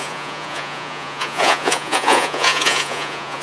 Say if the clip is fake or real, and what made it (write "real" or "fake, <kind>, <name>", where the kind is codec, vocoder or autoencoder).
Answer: fake, vocoder, Vocos